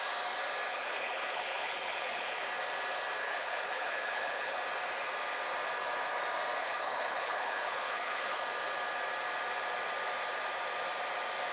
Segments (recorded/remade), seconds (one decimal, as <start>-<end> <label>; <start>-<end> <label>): 0.0-0.7 recorded; 0.7-2.4 remade; 2.4-3.2 recorded; 3.2-4.6 remade; 4.6-6.6 recorded; 6.6-8.4 remade; 8.4-11.5 recorded